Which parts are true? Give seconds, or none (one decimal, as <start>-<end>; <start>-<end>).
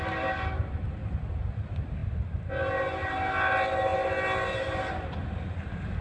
0.0-6.0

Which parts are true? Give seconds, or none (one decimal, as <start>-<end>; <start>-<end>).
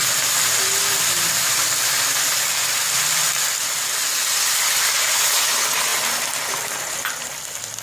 0.0-7.8